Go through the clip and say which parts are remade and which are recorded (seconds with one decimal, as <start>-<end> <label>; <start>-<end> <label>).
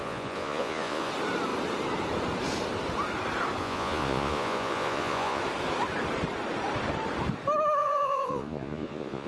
0.0-1.1 remade; 1.1-3.6 recorded; 3.6-5.4 remade; 5.4-7.8 recorded; 7.8-9.3 remade